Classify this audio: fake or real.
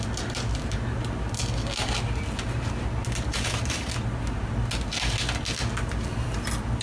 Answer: real